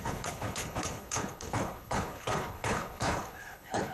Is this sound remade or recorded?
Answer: remade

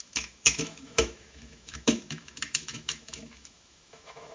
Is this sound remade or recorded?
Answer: remade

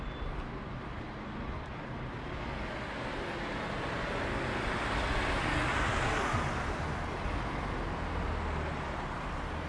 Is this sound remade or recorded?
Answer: recorded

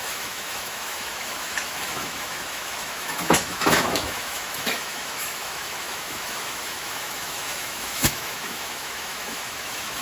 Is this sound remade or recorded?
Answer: remade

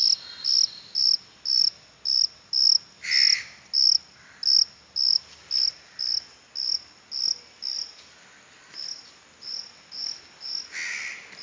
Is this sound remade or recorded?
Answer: recorded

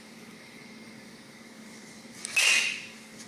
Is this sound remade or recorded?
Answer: remade